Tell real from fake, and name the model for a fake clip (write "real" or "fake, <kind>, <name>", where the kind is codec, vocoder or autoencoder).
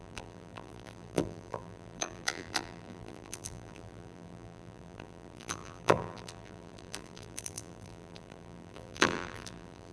fake, vocoder, BigVGAN v2